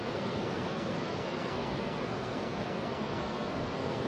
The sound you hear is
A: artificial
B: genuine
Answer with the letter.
A